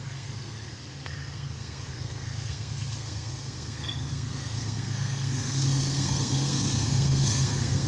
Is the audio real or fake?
fake